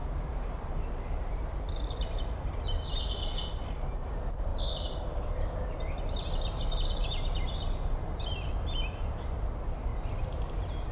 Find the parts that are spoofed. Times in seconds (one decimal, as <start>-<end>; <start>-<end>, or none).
0.0-0.8